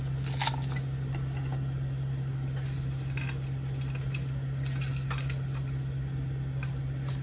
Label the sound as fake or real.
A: real